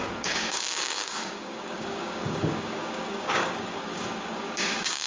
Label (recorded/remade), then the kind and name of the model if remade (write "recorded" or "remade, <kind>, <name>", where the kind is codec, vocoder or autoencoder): remade, codec, DAC